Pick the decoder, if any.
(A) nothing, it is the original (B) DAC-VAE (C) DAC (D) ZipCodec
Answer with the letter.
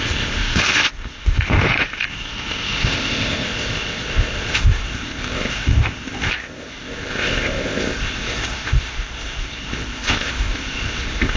D